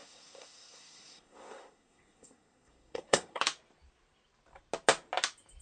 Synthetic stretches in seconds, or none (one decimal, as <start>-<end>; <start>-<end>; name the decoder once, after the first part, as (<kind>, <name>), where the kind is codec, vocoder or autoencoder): 0.0-3.4 (codec, SNAC)